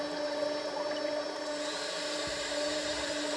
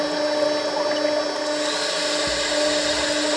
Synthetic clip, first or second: first